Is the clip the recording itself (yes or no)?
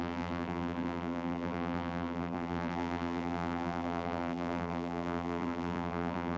no